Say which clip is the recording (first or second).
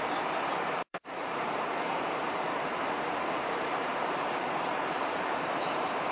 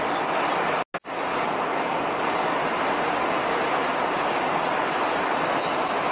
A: second